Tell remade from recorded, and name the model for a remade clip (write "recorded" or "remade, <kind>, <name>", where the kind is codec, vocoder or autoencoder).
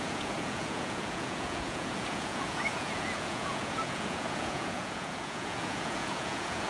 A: remade, vocoder, Vocos